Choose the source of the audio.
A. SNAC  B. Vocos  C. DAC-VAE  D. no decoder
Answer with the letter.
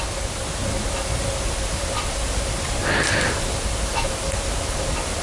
D